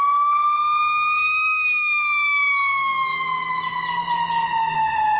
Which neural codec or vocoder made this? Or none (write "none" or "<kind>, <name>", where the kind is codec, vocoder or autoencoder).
none